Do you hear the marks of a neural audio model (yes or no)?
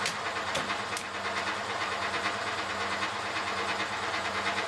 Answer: no